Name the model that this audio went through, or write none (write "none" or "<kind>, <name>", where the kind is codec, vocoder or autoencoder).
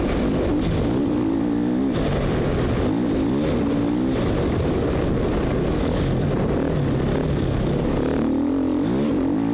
none